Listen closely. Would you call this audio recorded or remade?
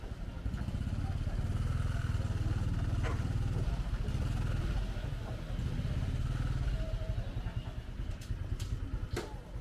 recorded